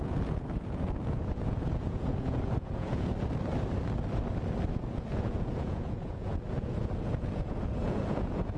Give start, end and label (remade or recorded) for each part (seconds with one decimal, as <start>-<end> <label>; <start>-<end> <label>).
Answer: 0.0-3.1 remade; 3.1-4.7 recorded; 4.7-8.6 remade